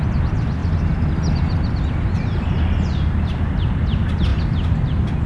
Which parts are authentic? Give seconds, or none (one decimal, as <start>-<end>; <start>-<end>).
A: 0.0-5.3